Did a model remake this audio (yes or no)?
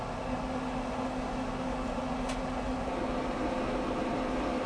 no